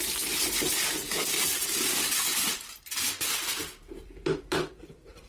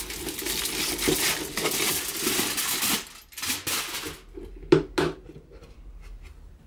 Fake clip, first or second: first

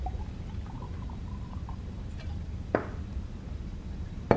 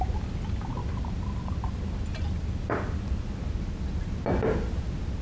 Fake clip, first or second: first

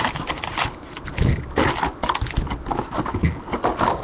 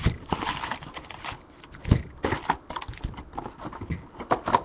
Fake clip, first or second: second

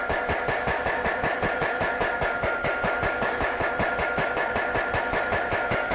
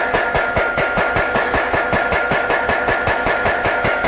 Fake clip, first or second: first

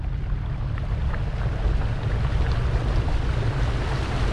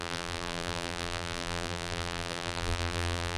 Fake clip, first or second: second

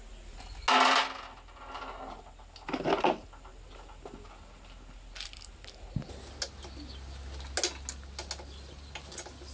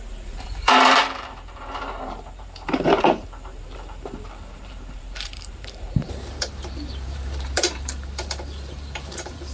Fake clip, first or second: second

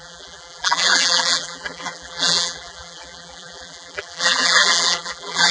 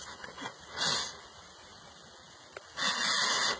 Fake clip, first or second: first